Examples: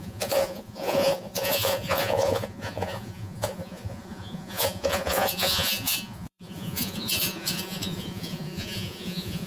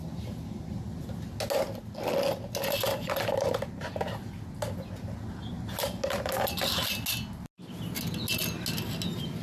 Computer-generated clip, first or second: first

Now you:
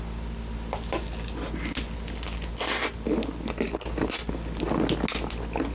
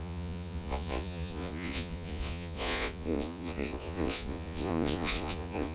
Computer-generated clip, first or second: second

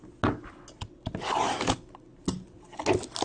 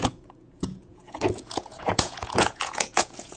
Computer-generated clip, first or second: second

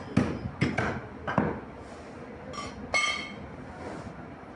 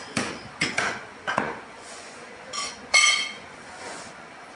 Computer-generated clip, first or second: second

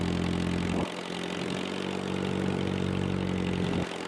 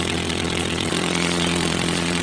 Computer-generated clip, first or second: second